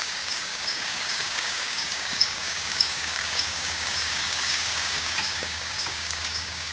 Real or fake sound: fake